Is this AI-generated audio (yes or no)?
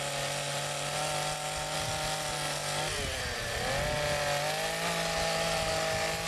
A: no